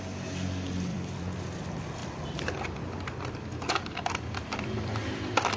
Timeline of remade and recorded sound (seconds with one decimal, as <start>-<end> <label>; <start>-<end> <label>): 0.0-0.9 recorded; 0.9-1.4 remade; 1.4-2.0 recorded; 2.0-5.6 remade